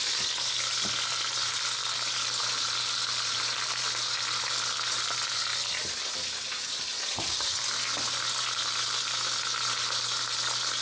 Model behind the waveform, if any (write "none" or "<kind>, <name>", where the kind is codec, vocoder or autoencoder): none